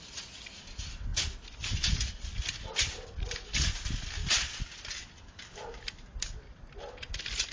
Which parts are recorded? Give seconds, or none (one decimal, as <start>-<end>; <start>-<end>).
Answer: 0.0-7.5